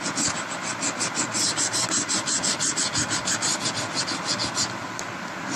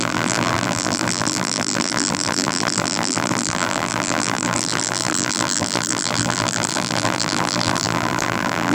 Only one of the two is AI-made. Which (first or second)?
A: second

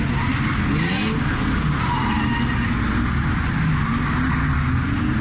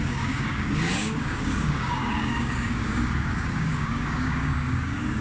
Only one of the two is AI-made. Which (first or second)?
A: second